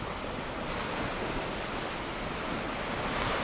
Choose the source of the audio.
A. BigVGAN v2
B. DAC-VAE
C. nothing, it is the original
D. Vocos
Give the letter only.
C